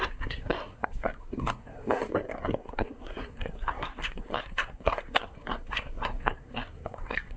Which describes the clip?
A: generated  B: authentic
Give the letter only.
A